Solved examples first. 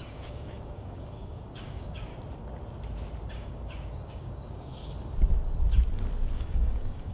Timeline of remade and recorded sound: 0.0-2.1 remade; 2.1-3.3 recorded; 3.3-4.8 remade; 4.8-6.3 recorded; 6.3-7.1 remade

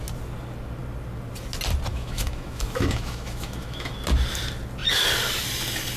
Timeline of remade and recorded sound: 0.0-1.9 recorded; 1.9-3.9 remade; 3.9-6.0 recorded

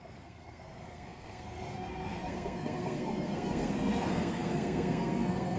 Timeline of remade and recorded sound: 0.0-5.6 remade

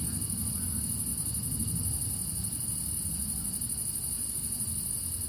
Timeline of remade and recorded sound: 0.0-5.3 recorded

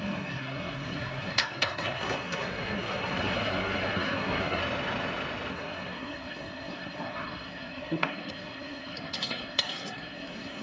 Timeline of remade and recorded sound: 0.0-4.6 remade; 4.6-5.5 recorded; 5.5-10.6 remade

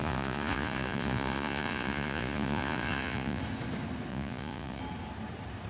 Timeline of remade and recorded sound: 0.0-3.4 remade; 3.4-4.1 recorded; 4.1-4.8 remade; 4.8-5.7 recorded

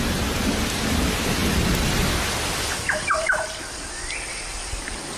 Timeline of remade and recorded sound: 0.0-5.2 recorded